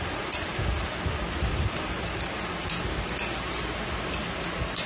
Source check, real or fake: real